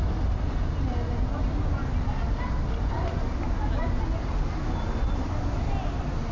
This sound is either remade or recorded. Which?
recorded